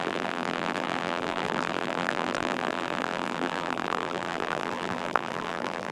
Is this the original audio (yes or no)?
no